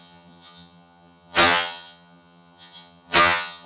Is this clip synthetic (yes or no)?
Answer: yes